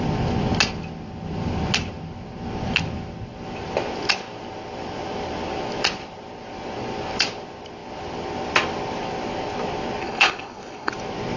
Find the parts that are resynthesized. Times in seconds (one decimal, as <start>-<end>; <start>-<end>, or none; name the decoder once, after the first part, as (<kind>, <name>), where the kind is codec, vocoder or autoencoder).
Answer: 10.0-10.9 (codec, HILCodec)